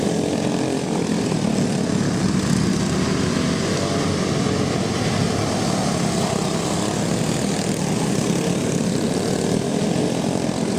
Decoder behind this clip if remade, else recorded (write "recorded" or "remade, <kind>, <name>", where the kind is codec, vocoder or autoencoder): recorded